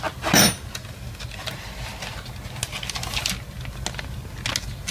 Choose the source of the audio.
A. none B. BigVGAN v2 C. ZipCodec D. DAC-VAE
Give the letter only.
A